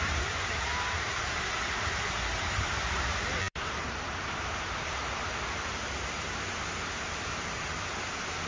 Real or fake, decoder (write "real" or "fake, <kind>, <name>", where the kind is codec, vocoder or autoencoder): fake, vocoder, BigVGAN v2